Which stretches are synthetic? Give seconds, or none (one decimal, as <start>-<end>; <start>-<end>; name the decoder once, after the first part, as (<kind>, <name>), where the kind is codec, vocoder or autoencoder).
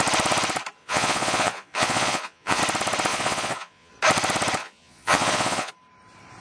0.8-2.6 (vocoder, Vocos); 3.1-3.9; 4.6-5.7